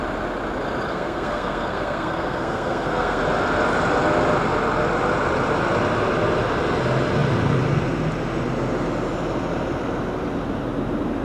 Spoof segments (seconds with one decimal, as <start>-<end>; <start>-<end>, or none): 0.9-3.2